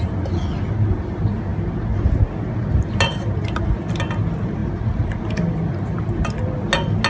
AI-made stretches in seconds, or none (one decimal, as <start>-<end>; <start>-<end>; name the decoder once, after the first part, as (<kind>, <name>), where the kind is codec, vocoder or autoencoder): none